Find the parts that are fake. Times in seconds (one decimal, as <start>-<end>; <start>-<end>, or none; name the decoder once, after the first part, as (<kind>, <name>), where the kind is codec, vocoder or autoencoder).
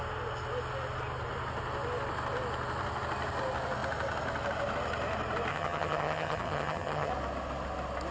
5.5-7.1 (vocoder, HiFi-GAN)